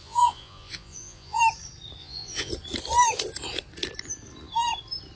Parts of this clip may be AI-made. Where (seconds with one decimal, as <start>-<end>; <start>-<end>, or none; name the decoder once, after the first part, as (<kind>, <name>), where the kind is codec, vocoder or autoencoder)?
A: 0.0-1.4 (vocoder, Vocos); 2.0-2.5